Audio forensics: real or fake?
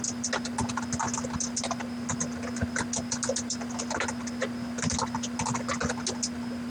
real